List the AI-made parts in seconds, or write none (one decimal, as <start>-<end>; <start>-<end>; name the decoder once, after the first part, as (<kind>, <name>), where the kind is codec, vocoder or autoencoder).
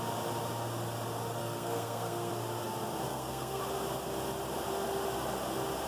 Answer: 1.4-2.3 (codec, SNAC); 3.1-3.6